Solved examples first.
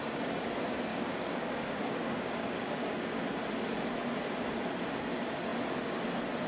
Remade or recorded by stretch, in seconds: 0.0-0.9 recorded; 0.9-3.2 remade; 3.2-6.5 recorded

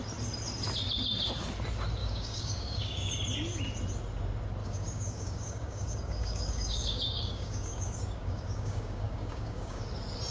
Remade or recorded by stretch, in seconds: 0.0-2.0 recorded; 2.0-3.1 remade; 3.1-4.6 recorded; 4.6-9.8 remade; 9.8-10.3 recorded

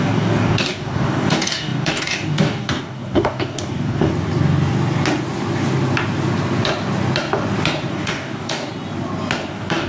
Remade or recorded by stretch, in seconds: 0.0-4.1 remade; 4.1-7.9 recorded; 7.9-8.7 remade; 8.7-9.5 recorded; 9.5-9.9 remade